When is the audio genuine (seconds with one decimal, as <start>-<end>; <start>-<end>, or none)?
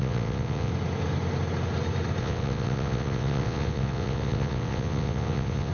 0.7-2.2